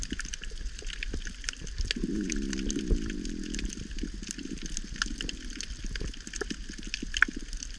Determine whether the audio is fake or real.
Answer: real